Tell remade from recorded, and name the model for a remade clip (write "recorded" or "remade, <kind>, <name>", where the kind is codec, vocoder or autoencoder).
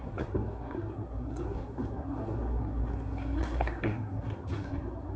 remade, codec, SNAC